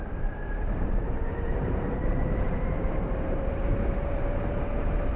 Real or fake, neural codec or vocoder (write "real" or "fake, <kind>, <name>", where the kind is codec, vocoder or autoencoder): fake, vocoder, BigVGAN v2